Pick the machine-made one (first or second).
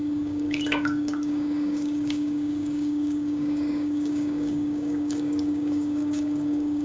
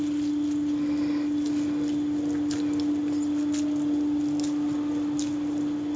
first